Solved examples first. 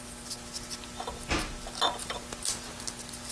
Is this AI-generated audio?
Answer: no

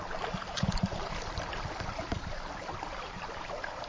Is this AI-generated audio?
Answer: yes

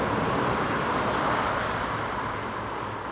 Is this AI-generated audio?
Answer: no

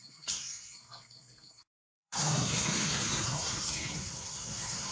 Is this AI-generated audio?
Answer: yes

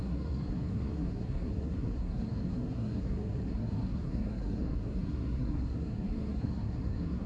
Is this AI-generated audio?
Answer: yes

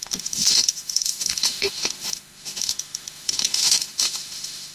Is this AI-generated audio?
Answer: yes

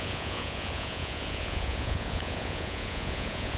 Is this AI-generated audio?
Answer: yes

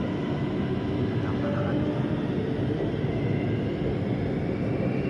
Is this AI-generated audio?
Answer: no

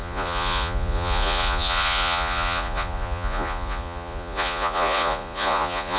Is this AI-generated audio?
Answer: yes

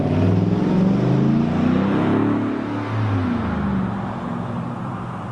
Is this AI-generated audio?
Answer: no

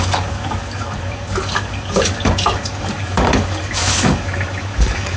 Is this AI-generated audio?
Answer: yes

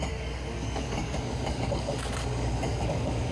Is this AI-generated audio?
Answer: yes